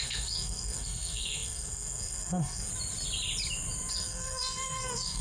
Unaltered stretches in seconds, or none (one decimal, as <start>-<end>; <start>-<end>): 2.7-3.9